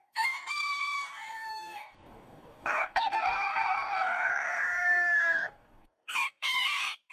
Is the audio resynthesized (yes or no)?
yes